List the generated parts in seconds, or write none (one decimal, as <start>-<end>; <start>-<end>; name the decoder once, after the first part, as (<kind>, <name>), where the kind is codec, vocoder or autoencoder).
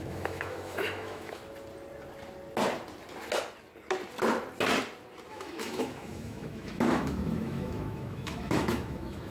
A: 0.0-1.4 (autoencoder, DAC-VAE); 5.3-9.3